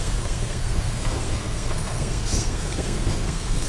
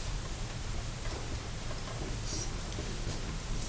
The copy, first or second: first